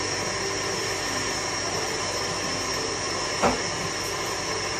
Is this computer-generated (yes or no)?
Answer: no